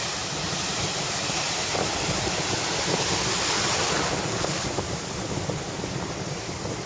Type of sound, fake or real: real